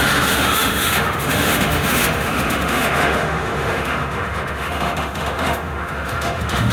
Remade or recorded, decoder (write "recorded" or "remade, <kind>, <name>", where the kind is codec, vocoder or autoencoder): remade, autoencoder, DAC-VAE